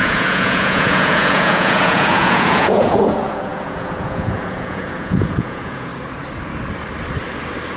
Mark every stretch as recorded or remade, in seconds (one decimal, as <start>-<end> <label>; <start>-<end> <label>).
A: 0.0-5.9 remade; 5.9-7.8 recorded